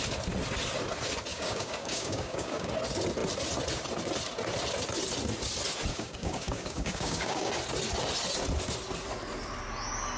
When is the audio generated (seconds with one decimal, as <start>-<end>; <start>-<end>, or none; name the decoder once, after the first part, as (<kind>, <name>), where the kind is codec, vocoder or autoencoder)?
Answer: 1.3-2.7 (codec, DAC); 5.9-7.5